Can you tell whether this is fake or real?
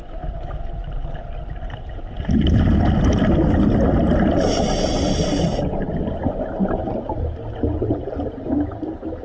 real